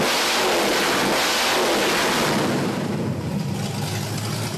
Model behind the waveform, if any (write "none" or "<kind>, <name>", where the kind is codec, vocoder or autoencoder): none